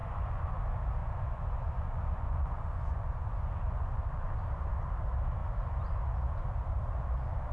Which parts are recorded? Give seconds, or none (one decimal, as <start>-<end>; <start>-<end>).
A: 0.6-1.0; 4.3-7.5